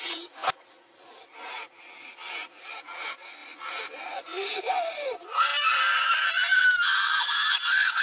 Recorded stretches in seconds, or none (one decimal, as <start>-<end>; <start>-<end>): 0.0-8.0